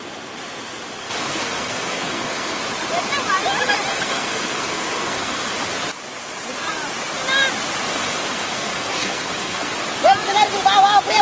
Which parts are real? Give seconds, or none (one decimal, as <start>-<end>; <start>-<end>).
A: 0.0-1.0; 2.6-3.9; 5.5-7.9; 9.7-11.2